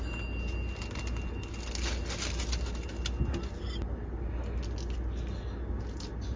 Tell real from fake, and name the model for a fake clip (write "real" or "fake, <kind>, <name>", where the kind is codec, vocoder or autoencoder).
real